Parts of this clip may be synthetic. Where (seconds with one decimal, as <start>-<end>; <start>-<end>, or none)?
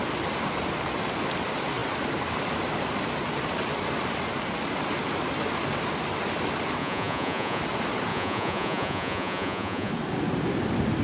6.8-7.6; 8.1-9.9